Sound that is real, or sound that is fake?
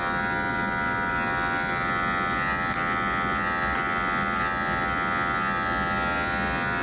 real